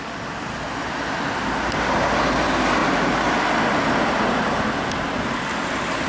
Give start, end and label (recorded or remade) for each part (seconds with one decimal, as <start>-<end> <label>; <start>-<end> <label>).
0.0-6.1 recorded